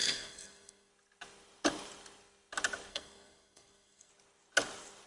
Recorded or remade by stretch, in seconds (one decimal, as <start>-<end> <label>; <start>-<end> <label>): 0.0-0.9 remade; 0.9-2.9 recorded; 2.9-4.1 remade; 4.1-5.1 recorded